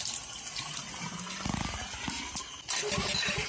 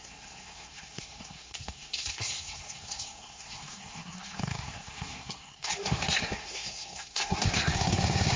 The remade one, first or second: second